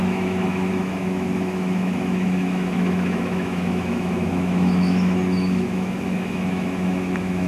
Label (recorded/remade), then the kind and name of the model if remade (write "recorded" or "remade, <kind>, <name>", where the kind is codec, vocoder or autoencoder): remade, autoencoder, DAC-VAE